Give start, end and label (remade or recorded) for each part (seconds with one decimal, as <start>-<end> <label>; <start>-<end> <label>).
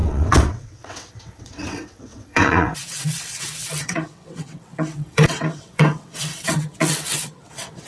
0.0-7.9 remade